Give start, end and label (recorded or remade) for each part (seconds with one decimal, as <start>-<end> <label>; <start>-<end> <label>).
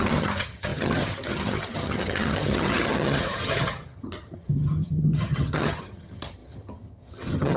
0.0-7.6 remade